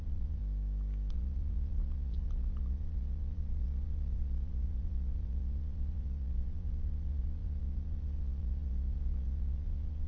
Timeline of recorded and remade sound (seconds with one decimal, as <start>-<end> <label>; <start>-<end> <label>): 0.0-0.4 remade; 0.4-1.1 recorded; 1.1-10.1 remade